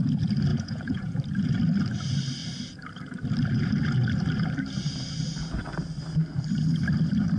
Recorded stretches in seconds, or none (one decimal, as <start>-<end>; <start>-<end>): 0.0-0.5; 1.2-7.4